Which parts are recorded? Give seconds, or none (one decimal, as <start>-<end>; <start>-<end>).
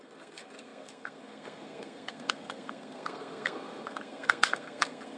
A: none